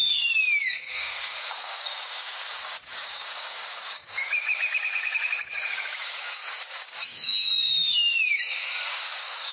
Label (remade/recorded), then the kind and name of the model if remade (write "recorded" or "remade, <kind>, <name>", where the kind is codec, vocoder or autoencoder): remade, codec, DAC